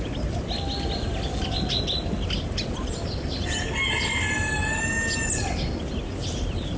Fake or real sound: real